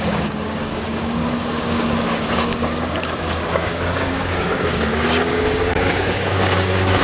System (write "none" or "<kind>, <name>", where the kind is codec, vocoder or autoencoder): codec, DAC